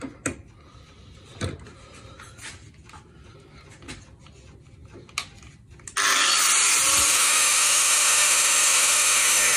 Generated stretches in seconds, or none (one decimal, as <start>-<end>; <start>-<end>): 7.1-9.6